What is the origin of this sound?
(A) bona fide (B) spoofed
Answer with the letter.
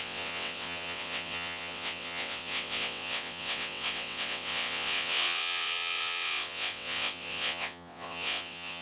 B